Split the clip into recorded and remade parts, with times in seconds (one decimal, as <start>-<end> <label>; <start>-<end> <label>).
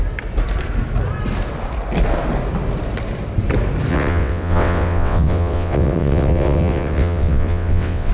0.0-3.9 recorded; 3.9-8.1 remade